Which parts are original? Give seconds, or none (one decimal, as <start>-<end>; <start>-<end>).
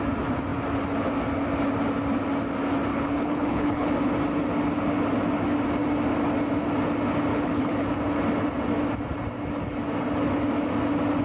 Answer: 0.0-2.9; 3.9-7.3; 7.8-11.2